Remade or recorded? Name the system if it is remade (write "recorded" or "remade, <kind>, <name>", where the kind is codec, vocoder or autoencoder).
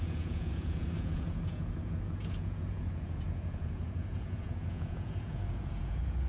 remade, vocoder, Vocos